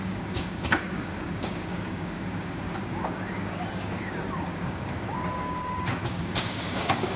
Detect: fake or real fake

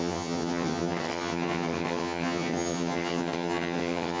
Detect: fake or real fake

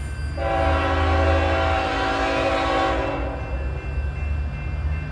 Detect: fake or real real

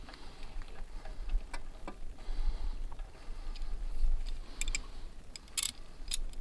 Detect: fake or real real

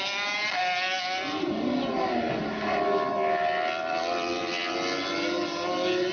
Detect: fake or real real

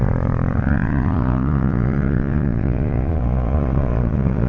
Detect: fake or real fake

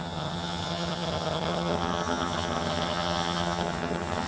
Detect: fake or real fake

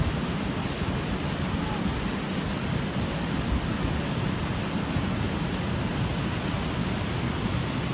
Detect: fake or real real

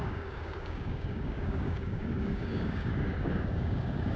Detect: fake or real fake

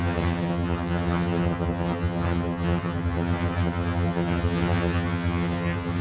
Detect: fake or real fake